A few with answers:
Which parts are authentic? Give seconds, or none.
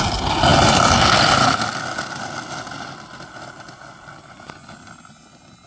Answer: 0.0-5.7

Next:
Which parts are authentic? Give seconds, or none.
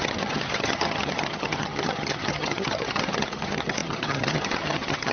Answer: none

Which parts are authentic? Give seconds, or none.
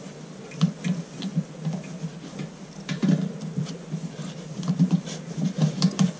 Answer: 1.3-2.5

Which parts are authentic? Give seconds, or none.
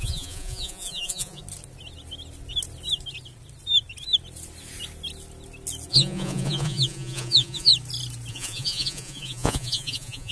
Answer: 1.4-5.9; 7.7-8.3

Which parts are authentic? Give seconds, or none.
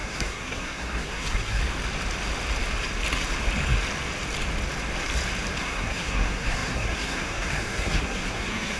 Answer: 1.6-5.6